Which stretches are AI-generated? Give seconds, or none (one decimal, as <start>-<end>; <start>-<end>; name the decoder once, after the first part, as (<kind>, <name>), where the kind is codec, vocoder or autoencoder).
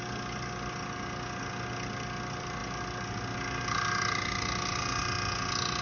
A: none